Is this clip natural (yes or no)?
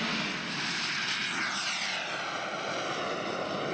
yes